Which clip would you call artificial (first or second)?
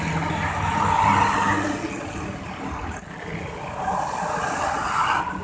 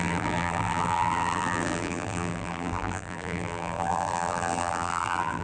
second